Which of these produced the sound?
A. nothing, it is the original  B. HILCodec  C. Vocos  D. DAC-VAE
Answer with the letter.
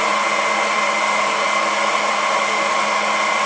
A